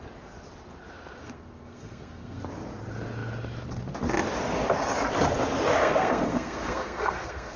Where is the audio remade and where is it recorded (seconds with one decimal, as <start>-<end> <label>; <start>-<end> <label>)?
0.0-1.2 recorded; 1.2-2.4 remade; 2.4-5.8 recorded; 5.8-7.6 remade